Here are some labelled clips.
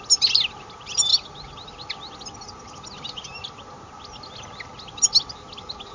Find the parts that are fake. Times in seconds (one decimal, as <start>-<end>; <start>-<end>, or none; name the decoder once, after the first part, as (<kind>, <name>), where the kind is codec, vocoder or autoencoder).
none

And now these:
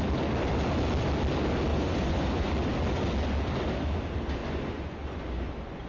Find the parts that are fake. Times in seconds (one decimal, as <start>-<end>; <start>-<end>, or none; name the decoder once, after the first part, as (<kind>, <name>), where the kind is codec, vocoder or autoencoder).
1.7-2.5 (vocoder, Vocos); 4.4-5.9

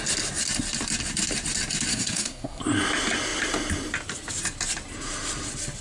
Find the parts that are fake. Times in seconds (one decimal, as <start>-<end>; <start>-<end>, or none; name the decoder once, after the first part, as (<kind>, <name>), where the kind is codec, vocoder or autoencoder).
1.9-2.6 (codec, SNAC)

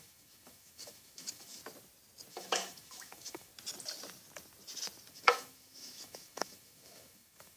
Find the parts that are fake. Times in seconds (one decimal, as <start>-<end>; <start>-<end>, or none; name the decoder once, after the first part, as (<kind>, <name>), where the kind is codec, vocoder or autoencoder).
0.0-1.6 (autoencoder, DAC-VAE); 2.3-3.5; 5.1-7.6

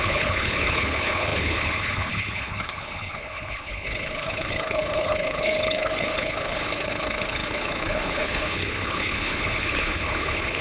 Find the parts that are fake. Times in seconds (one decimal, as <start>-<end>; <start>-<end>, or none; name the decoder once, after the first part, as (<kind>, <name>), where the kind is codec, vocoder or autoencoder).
0.0-10.6 (codec, HILCodec)